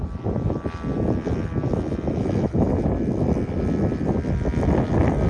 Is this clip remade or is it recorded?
recorded